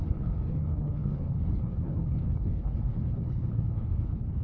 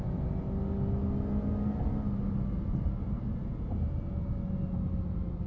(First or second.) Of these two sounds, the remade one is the first